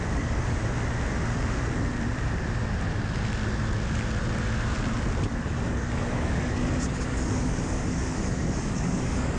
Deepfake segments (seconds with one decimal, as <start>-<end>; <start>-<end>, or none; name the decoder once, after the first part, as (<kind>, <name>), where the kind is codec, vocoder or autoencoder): 0.0-0.6 (codec, DAC); 5.3-9.4